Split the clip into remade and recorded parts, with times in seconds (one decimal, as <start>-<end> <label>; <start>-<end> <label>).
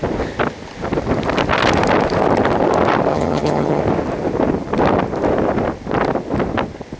0.0-3.1 recorded; 3.1-3.8 remade; 3.8-7.0 recorded